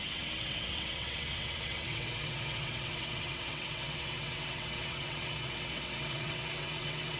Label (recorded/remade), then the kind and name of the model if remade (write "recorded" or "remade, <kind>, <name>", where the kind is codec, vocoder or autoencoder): remade, vocoder, WaveNeXt